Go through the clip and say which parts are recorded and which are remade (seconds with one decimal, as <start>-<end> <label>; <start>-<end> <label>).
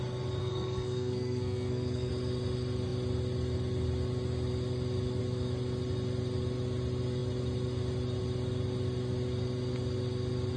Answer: 0.0-0.4 recorded; 0.4-2.1 remade; 2.1-10.6 recorded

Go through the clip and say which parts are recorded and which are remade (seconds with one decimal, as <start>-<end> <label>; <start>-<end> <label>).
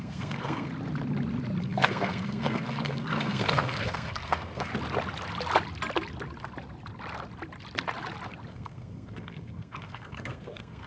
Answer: 0.0-0.7 remade; 0.7-1.6 recorded; 1.6-4.7 remade; 4.7-8.5 recorded; 8.5-10.9 remade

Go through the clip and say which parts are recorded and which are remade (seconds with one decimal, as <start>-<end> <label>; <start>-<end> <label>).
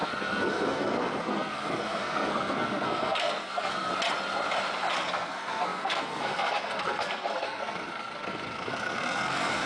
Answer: 0.0-3.9 remade; 3.9-4.9 recorded; 4.9-9.7 remade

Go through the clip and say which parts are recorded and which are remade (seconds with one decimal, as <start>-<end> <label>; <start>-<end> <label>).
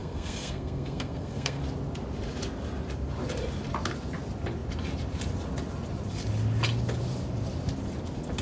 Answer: 0.0-1.6 remade; 1.6-8.4 recorded